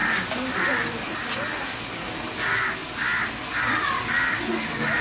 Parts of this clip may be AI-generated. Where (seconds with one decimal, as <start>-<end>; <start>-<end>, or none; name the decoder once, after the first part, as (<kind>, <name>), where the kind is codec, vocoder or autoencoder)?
none

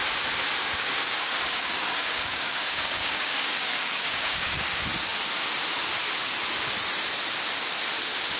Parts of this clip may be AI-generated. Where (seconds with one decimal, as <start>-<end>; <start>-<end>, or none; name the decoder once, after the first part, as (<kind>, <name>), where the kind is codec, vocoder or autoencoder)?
0.6-4.6 (codec, DAC)

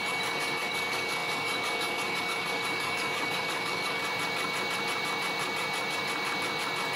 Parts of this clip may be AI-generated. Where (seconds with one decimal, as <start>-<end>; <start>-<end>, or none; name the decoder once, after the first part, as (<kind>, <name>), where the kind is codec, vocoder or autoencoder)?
0.0-4.0 (codec, DAC)

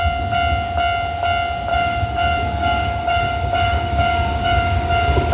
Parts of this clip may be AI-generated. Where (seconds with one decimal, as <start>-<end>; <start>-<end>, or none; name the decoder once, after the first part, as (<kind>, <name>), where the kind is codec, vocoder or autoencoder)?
1.7-5.3 (codec, DAC)

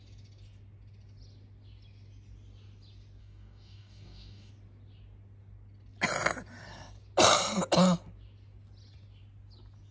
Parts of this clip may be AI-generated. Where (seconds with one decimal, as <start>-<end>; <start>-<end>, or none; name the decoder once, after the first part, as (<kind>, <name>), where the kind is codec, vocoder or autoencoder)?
3.2-4.5 (codec, DAC)

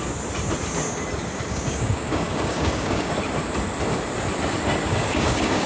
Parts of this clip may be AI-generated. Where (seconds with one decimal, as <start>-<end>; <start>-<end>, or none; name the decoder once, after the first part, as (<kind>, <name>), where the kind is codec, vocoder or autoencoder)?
1.5-3.1 (codec, DAC); 4.9-5.7

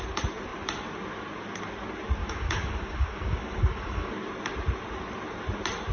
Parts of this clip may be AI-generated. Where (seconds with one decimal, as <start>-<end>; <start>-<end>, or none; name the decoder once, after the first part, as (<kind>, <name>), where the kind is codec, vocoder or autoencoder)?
2.2-4.1 (codec, DAC)

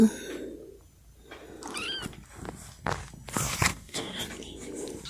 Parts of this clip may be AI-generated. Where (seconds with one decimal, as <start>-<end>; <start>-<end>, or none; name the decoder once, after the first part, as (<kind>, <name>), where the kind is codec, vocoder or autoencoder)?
3.7-4.2 (codec, DAC)